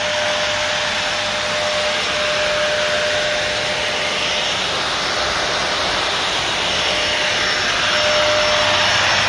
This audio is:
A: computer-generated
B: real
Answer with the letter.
B